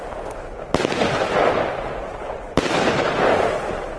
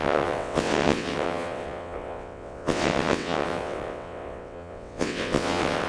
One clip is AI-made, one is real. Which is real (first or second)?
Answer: first